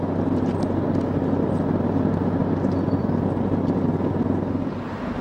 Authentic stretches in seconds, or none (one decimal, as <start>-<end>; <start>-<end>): 0.0-5.2

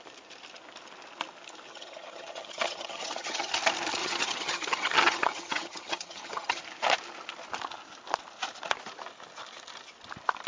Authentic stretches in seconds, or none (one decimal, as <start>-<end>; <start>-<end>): 0.0-1.7; 3.5-4.0; 6.6-10.5

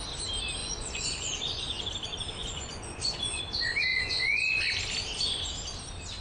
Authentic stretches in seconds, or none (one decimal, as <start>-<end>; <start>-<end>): 0.0-0.6; 1.8-2.4; 3.4-3.9; 4.6-6.2

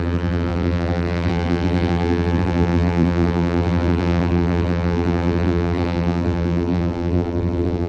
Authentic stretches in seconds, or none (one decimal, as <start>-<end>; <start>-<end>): none